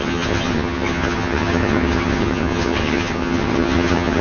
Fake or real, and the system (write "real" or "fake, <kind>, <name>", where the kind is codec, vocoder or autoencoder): fake, vocoder, HiFi-GAN